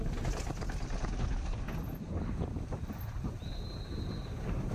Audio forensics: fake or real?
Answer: real